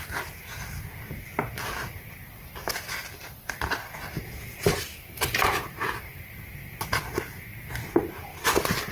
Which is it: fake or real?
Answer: real